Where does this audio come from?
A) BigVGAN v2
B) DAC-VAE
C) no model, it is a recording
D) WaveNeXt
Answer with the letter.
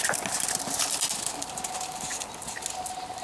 C